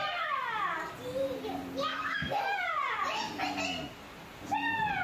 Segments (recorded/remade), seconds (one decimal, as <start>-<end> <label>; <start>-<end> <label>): 0.0-1.9 recorded; 1.9-2.6 remade; 2.6-5.0 recorded